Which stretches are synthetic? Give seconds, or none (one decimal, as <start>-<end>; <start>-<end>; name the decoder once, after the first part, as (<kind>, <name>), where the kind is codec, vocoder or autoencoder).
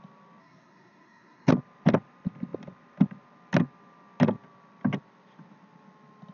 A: 0.4-1.5 (codec, SNAC)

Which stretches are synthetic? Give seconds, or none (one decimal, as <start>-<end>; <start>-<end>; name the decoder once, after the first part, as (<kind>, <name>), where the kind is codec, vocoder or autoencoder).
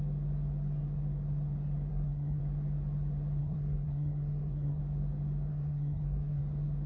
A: 1.9-2.4 (codec, SNAC); 3.4-4.8; 5.5-6.4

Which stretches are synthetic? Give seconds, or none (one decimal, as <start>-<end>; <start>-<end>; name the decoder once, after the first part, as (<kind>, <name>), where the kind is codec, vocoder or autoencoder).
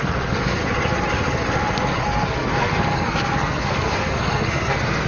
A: 0.0-0.6 (codec, SNAC); 2.0-5.1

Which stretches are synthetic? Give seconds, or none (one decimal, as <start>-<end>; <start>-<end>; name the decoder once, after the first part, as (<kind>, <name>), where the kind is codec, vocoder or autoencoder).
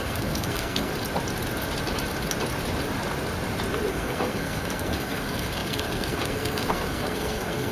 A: 0.0-0.9 (codec, SNAC); 3.9-7.7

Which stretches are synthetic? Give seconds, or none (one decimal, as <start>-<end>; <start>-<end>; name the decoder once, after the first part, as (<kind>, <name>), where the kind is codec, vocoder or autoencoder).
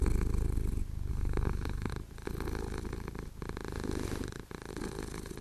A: 1.1-1.9 (codec, SNAC)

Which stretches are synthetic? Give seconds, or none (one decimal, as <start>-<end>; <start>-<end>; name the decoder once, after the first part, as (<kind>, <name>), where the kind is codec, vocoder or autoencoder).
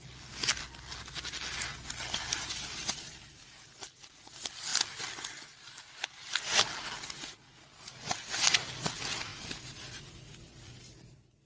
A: none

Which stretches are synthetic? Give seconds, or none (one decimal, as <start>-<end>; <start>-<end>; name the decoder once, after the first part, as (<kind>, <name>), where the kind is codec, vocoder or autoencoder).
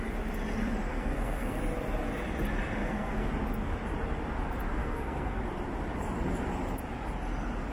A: 0.9-1.6 (codec, SNAC); 2.8-3.3; 4.8-5.4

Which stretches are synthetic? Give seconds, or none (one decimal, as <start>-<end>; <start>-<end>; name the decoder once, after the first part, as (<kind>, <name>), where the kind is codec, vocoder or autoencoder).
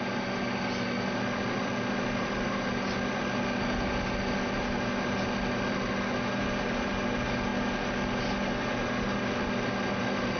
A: none